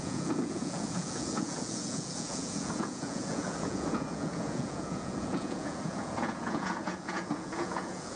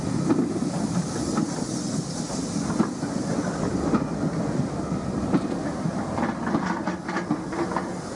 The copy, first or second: first